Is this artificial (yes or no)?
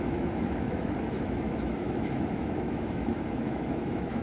yes